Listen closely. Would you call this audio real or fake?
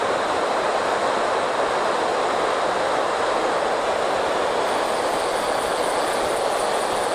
real